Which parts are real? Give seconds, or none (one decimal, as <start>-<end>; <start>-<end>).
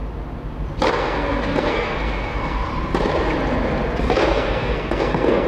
0.0-0.9; 2.7-4.0